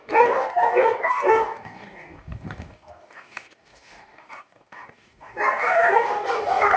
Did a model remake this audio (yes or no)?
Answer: yes